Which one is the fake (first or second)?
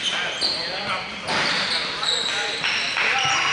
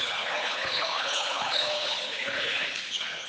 second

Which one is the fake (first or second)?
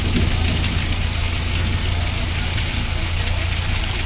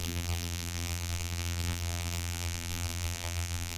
second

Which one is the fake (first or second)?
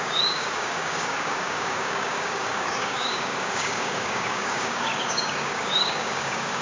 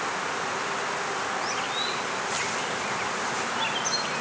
first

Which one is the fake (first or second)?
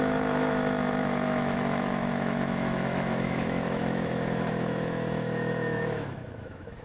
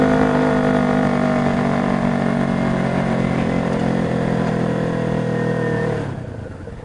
first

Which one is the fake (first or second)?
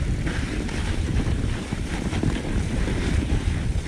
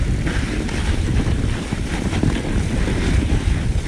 first